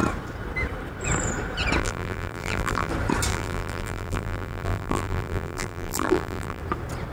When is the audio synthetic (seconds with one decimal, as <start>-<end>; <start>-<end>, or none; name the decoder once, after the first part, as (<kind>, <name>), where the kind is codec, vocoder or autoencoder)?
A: 1.8-2.9 (vocoder, BigVGAN v2); 3.3-6.6